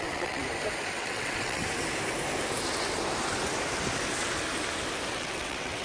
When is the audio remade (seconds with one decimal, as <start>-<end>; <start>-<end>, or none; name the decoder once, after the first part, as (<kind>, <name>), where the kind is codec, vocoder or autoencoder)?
0.0-0.4 (vocoder, WaveNeXt); 1.0-1.6; 5.1-5.8